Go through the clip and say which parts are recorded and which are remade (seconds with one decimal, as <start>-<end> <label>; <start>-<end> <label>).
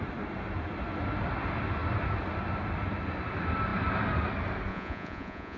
0.0-4.7 recorded; 4.7-5.6 remade